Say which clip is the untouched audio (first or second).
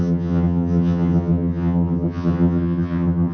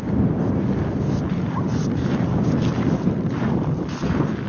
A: second